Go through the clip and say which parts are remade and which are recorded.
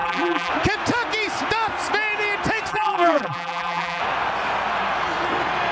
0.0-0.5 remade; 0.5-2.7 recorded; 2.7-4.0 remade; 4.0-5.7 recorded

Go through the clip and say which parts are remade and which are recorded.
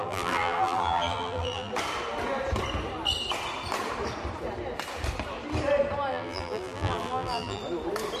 0.0-1.7 remade; 1.7-6.1 recorded; 6.1-7.6 remade; 7.6-8.2 recorded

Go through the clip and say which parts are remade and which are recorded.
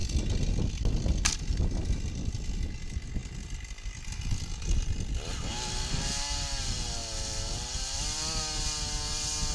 0.0-0.5 remade; 0.5-7.0 recorded; 7.0-8.4 remade; 8.4-9.5 recorded